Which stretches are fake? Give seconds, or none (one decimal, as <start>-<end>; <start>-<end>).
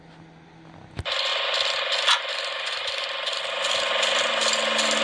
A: none